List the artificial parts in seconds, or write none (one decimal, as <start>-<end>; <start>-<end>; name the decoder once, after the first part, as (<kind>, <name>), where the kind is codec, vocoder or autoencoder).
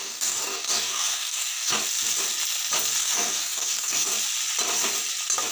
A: 0.0-1.7 (codec, DAC); 3.0-4.1